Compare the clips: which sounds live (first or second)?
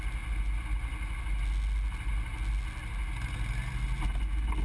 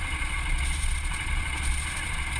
first